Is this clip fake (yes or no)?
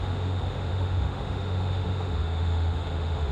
yes